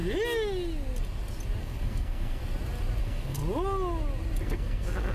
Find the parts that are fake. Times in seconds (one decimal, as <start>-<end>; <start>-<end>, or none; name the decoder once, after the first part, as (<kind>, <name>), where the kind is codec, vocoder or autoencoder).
1.6-2.4 (codec, SNAC); 3.0-3.4; 4.4-5.1